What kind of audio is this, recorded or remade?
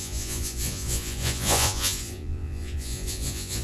remade